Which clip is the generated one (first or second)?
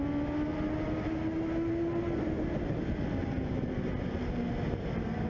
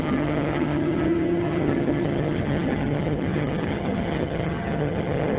second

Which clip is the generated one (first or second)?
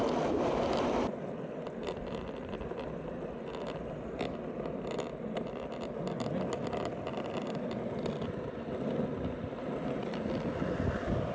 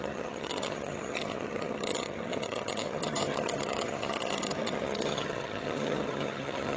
second